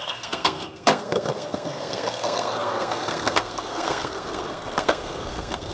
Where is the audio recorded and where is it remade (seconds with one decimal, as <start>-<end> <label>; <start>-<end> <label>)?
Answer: 0.0-5.7 remade